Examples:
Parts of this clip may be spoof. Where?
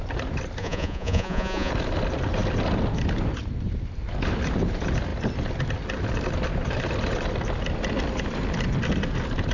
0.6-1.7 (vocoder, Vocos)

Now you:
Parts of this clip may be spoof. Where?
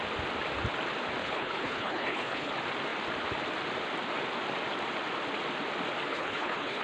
1.2-2.5 (codec, HILCodec); 6.1-6.8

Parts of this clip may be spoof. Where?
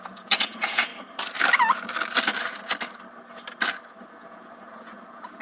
0.0-0.9 (vocoder, Vocos); 4.1-5.4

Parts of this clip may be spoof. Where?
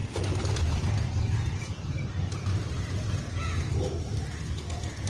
none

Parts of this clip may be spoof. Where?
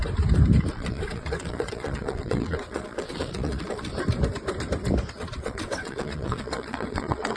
0.7-3.9 (vocoder, WaveNeXt); 5.1-7.4